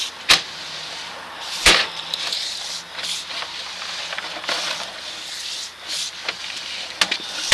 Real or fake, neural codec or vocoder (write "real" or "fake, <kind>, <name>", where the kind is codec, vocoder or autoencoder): real